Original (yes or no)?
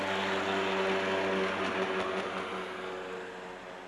yes